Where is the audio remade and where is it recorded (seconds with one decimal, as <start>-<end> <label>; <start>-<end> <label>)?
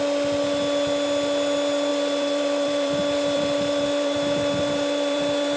0.0-1.9 recorded; 1.9-5.6 remade